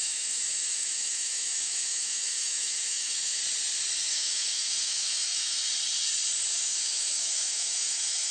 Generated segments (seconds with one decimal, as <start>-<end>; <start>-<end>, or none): 0.0-3.4; 4.1-5.6; 6.5-8.3